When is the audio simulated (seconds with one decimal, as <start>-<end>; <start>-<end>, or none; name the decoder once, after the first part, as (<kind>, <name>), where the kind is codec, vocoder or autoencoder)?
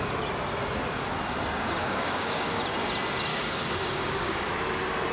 1.8-2.6 (codec, DAC); 3.3-4.5